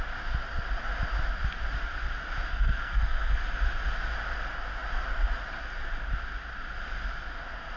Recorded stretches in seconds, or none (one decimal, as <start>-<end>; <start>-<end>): 0.0-2.5; 3.4-7.8

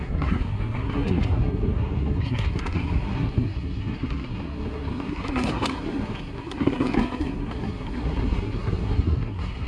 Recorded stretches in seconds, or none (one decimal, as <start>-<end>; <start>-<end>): none

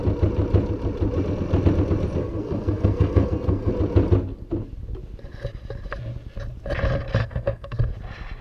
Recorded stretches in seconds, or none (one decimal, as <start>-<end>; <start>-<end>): 0.0-2.2; 3.7-7.2; 7.8-8.4

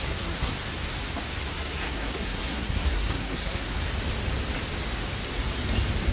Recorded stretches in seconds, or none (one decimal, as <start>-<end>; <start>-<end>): 0.5-1.4; 3.7-6.1

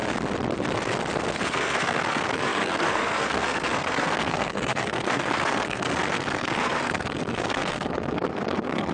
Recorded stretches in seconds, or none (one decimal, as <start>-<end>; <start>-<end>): 0.0-1.5

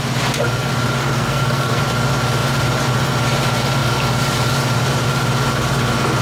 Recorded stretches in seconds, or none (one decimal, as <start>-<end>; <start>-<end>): 0.0-1.0; 1.8-6.2

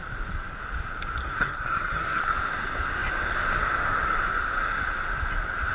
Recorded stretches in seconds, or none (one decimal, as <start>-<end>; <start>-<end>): 0.0-1.2; 2.2-5.7

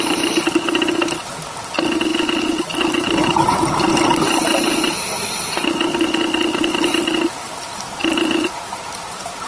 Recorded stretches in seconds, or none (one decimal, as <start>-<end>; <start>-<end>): 0.0-9.5